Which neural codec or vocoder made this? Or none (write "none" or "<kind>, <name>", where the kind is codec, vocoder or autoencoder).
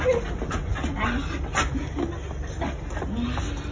none